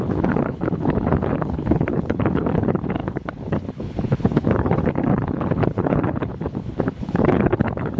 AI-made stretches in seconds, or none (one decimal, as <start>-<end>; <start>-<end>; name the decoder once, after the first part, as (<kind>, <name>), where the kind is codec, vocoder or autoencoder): 0.0-8.0 (codec, HILCodec)